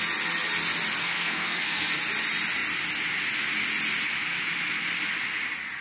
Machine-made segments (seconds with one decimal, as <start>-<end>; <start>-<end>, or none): 1.0-2.0

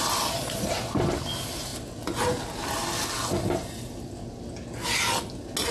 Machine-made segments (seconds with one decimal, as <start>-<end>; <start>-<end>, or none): none

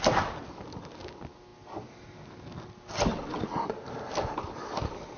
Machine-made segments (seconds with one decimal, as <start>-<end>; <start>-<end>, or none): none

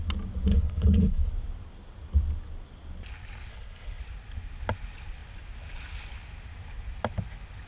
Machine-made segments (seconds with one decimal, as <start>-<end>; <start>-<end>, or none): 0.5-1.3; 3.5-4.0

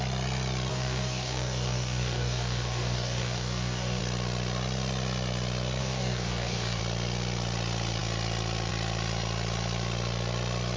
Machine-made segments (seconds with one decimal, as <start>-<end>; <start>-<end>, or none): 0.7-4.0; 5.8-6.8

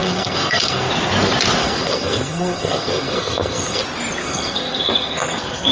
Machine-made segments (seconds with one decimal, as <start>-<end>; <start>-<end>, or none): 0.0-0.9; 1.6-3.8; 4.2-5.7

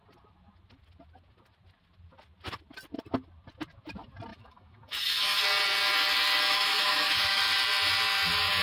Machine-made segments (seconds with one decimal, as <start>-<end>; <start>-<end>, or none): 4.3-5.4; 6.5-7.4

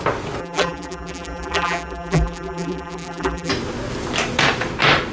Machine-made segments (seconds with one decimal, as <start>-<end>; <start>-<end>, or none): 0.4-3.5